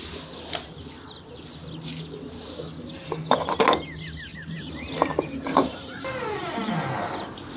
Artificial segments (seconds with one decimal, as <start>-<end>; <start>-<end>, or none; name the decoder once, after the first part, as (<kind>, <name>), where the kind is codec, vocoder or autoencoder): 4.3-6.7 (vocoder, BigVGAN v2)

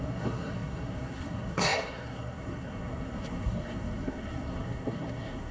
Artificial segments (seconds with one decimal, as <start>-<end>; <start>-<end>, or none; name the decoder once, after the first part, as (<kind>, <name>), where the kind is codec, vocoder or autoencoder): 0.0-5.5 (codec, SNAC)

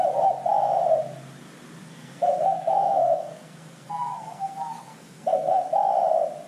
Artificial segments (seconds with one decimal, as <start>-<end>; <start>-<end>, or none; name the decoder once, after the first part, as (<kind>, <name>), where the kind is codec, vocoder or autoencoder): 1.8-5.7 (codec, SNAC)

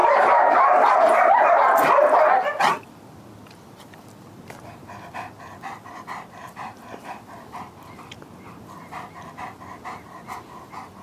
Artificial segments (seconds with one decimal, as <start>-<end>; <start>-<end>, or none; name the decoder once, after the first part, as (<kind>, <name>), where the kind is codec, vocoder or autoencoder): 0.0-3.5 (vocoder, BigVGAN v2)

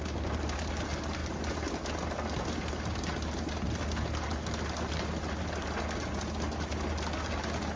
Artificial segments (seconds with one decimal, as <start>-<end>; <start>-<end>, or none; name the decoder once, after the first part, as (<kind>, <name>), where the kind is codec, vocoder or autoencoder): none